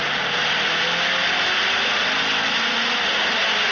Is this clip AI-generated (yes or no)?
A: no